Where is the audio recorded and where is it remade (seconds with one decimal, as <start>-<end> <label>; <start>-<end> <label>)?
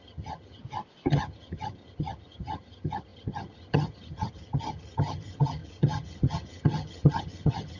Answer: 0.0-0.6 remade; 0.6-1.1 recorded; 1.1-7.8 remade